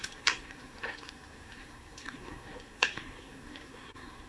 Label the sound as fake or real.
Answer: fake